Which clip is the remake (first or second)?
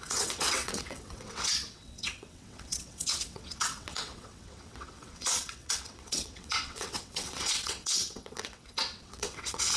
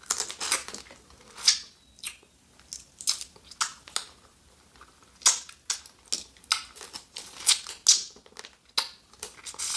first